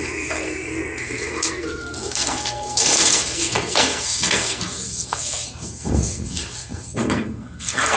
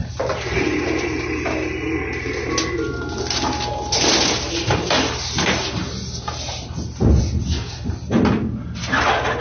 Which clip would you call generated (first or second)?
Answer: first